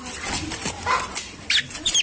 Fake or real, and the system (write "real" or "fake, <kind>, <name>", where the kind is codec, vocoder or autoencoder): real